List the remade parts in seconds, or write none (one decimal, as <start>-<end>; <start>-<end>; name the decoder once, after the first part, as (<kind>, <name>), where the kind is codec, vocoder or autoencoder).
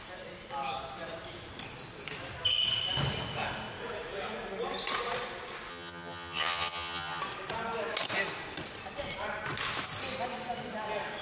5.7-7.2 (vocoder, HiFi-GAN)